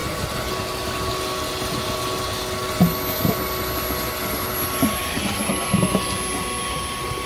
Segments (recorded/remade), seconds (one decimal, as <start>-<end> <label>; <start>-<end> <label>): 0.0-0.5 remade; 0.5-7.3 recorded